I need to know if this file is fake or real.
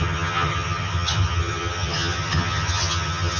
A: fake